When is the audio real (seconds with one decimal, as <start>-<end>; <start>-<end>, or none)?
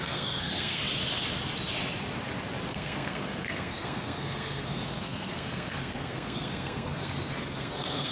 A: 0.8-2.7